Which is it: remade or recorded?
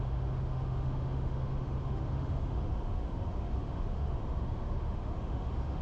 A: remade